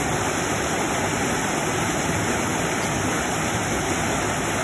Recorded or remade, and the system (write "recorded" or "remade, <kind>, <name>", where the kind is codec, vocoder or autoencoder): recorded